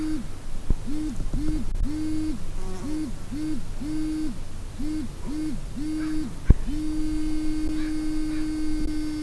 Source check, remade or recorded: recorded